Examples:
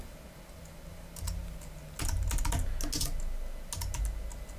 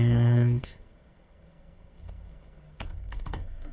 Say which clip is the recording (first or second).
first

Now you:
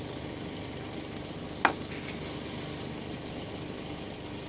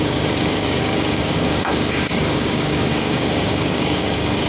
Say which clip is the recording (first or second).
first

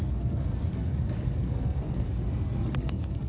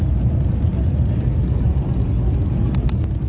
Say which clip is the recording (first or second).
second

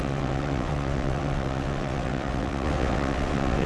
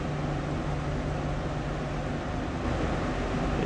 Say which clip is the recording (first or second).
second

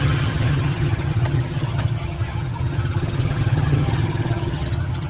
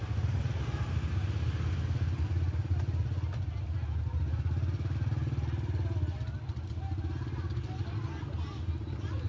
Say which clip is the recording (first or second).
second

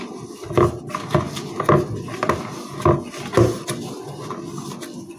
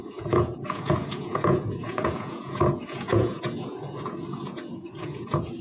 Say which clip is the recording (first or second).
first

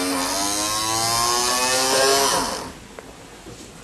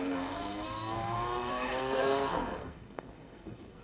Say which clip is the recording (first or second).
first